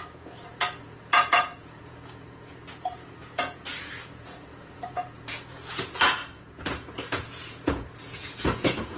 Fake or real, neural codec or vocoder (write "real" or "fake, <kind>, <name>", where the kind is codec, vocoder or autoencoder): fake, vocoder, Vocos